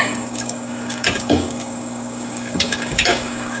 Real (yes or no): no